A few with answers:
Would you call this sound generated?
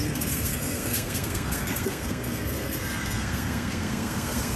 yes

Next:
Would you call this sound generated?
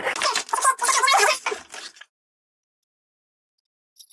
no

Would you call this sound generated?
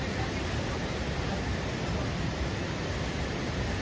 no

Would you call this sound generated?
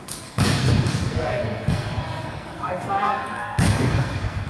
yes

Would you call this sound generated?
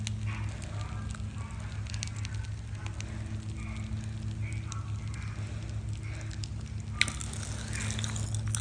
no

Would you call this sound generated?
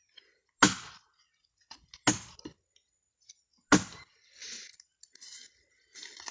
no